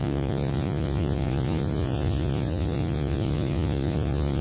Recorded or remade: remade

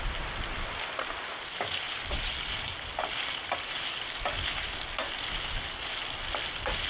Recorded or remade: recorded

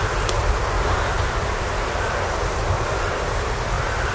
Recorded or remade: recorded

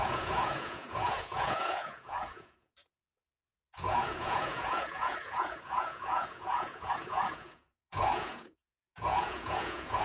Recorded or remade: remade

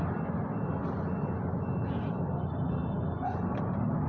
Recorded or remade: recorded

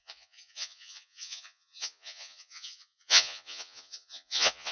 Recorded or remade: remade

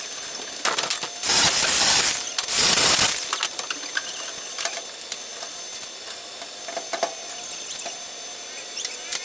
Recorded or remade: recorded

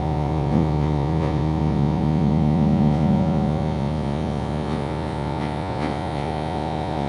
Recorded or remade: remade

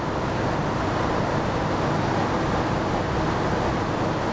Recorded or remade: recorded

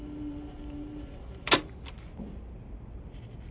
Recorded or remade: recorded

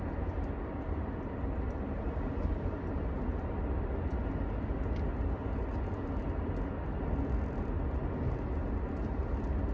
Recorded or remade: recorded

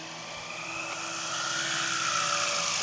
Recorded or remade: recorded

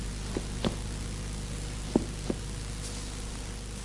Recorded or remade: recorded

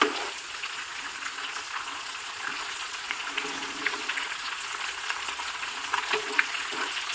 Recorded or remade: remade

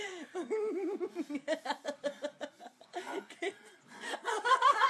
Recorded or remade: remade